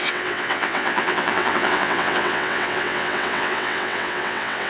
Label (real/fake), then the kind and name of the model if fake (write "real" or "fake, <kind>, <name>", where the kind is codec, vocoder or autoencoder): fake, vocoder, WaveNeXt